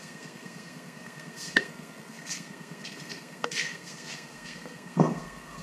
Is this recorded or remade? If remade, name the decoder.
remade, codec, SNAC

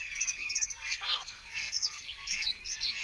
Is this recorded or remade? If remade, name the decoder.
remade, codec, SNAC